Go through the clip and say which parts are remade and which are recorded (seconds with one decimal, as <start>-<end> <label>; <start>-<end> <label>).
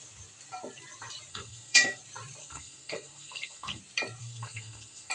0.0-1.3 recorded; 1.3-2.0 remade; 2.0-2.4 recorded; 2.4-3.8 remade; 3.8-4.2 recorded; 4.2-5.1 remade